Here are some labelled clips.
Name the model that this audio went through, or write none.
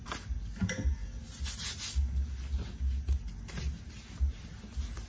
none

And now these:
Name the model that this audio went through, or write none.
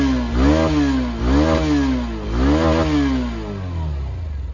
none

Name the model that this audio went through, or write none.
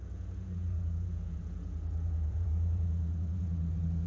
vocoder, Vocos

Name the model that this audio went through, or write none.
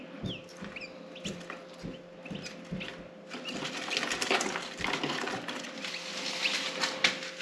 none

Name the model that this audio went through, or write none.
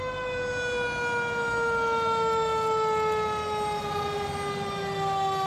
none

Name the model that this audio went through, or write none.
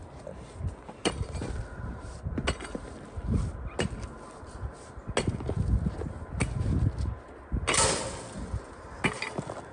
none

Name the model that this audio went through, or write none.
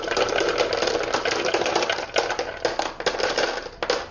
none